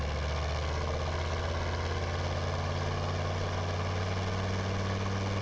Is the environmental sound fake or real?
real